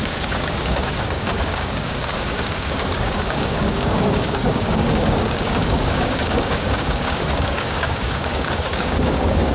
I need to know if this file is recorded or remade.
remade